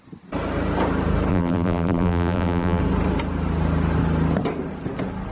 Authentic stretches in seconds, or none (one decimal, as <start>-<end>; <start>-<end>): 0.0-1.3; 2.8-5.3